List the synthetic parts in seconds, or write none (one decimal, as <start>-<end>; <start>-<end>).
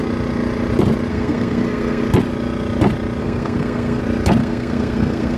1.1-2.0; 3.2-4.0; 4.4-5.4